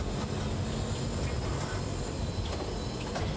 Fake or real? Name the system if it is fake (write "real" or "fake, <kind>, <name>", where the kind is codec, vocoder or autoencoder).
real